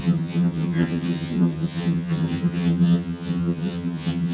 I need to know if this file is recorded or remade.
remade